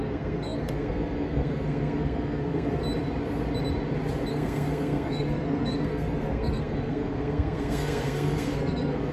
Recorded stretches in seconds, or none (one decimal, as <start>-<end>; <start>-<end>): 2.8-4.3

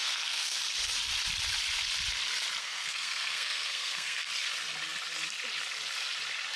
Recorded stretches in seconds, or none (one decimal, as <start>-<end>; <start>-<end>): 0.6-2.6; 4.3-6.6

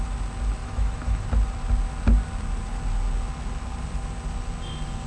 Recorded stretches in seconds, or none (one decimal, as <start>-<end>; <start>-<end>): 0.0-0.6; 1.2-5.1

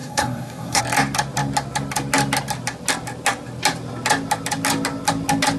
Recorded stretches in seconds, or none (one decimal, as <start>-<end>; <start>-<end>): 0.8-5.6